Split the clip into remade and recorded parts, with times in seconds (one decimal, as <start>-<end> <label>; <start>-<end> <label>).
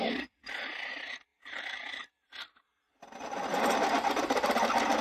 0.0-5.0 recorded